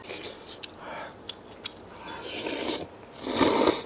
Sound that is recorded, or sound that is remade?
recorded